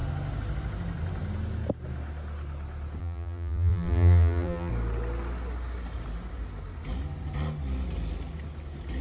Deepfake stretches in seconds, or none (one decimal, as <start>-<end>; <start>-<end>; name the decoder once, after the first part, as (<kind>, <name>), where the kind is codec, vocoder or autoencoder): 3.0-4.7 (vocoder, BigVGAN v2)